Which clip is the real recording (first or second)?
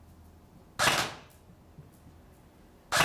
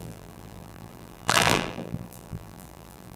first